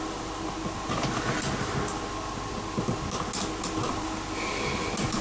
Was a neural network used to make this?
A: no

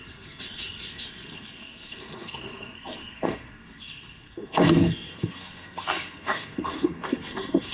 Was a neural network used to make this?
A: yes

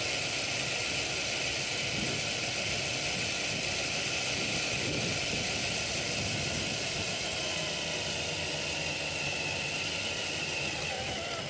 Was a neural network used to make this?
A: no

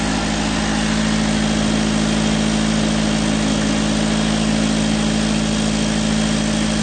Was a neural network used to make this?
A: no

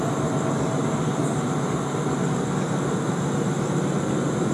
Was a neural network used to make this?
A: no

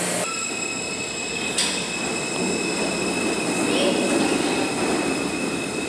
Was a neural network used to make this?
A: no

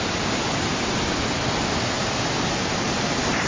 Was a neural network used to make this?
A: no